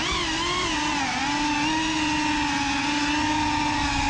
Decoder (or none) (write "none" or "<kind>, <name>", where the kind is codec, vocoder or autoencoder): none